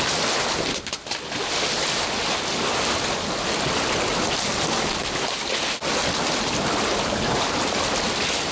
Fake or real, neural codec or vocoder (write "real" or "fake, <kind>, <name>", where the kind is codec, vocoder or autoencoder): real